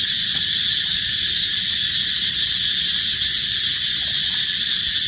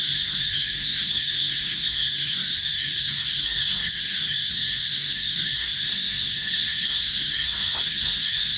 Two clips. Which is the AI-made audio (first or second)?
second